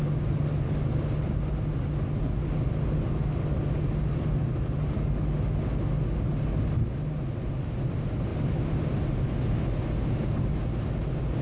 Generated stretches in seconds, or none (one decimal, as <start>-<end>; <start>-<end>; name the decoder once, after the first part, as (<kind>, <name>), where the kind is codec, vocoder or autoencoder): none